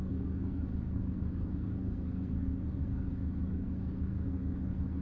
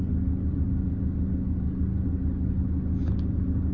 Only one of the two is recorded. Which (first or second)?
second